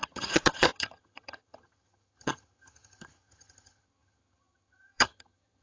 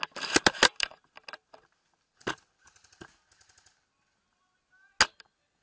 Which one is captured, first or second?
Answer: second